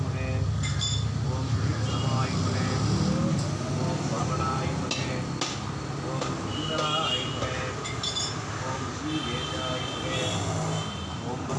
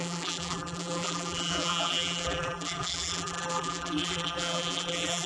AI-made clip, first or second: second